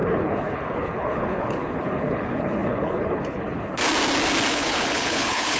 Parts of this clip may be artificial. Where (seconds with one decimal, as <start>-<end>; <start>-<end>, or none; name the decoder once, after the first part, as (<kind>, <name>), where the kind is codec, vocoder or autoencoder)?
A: 0.0-3.8 (codec, HILCodec); 4.5-5.6